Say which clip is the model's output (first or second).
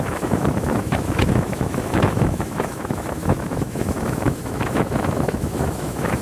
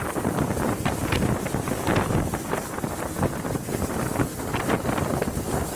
first